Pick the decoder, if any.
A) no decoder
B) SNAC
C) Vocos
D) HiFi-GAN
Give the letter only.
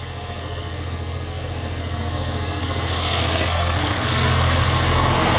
B